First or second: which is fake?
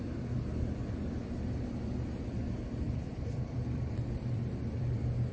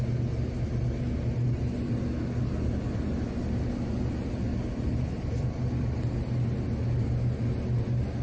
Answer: first